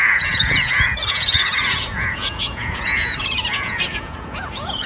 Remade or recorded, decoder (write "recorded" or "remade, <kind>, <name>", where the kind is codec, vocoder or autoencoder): remade, vocoder, Vocos